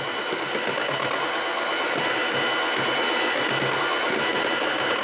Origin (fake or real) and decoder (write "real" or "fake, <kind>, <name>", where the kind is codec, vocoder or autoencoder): real